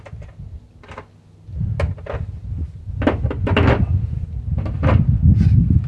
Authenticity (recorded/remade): recorded